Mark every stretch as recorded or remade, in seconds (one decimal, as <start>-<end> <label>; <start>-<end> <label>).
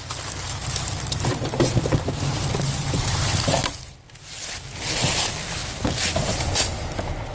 0.0-7.3 recorded